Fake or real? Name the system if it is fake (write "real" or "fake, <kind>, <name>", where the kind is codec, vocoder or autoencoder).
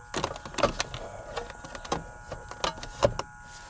real